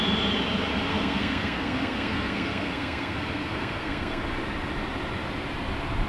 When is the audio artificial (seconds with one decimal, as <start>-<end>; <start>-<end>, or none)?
0.9-4.2